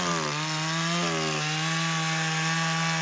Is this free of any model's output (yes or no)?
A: yes